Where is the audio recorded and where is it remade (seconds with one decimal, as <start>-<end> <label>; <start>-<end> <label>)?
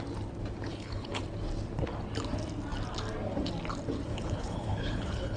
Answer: 0.0-0.7 recorded; 0.7-1.2 remade; 1.2-4.1 recorded; 4.1-5.4 remade